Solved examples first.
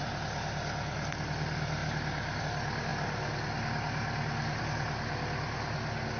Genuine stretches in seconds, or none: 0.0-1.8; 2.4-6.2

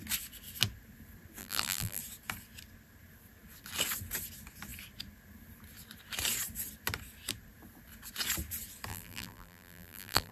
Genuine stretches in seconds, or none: 0.0-1.4; 2.0-8.9

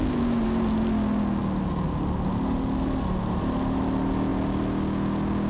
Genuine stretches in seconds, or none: 0.0-5.5

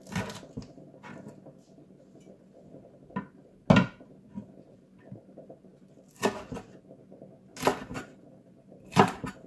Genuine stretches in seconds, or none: 0.0-7.9

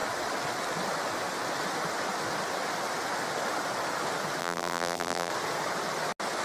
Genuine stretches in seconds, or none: 0.0-4.4; 5.3-6.4